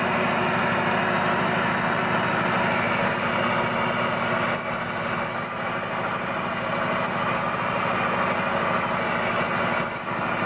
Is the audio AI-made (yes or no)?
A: no